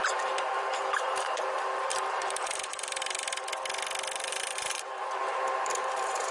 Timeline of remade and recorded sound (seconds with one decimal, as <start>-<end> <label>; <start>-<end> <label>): 0.0-3.5 remade; 3.5-4.3 recorded; 4.3-6.3 remade